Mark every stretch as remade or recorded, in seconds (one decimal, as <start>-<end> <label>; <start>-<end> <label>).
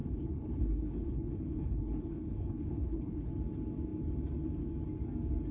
0.0-3.3 remade; 3.3-5.5 recorded